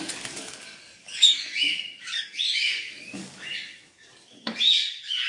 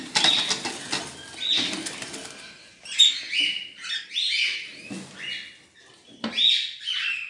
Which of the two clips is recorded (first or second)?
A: second